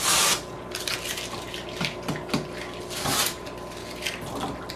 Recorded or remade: recorded